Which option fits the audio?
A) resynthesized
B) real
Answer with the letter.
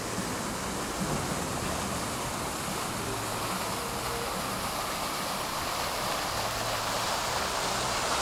B